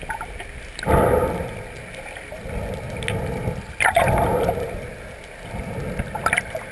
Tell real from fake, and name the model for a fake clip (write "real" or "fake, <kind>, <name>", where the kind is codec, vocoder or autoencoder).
real